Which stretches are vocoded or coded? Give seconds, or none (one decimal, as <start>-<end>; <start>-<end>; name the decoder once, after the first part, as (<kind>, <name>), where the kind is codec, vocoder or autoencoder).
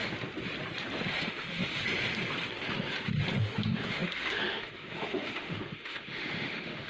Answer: 1.2-1.8 (autoencoder, DAC-VAE); 3.4-6.9